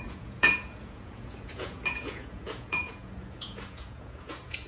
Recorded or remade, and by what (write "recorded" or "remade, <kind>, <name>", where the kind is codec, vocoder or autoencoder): remade, vocoder, Vocos